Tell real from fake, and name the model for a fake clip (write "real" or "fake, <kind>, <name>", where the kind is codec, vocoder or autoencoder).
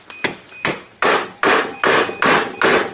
real